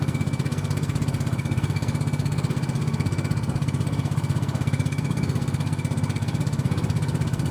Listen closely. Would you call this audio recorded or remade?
remade